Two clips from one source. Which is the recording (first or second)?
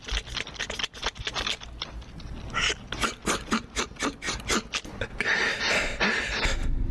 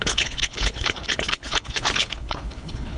first